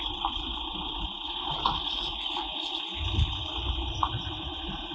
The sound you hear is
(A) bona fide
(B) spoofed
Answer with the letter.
A